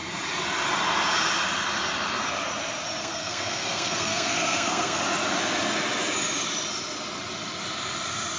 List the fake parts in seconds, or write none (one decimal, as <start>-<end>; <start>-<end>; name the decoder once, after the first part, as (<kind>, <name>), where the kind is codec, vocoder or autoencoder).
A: 3.0-5.0 (codec, SNAC)